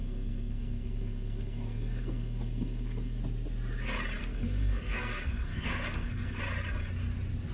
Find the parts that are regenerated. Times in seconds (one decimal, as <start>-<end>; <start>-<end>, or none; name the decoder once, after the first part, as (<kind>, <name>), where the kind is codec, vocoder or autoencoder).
0.0-3.2 (codec, SNAC); 4.2-6.4